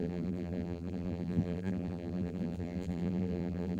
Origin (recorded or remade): remade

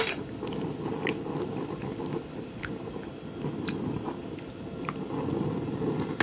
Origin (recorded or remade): recorded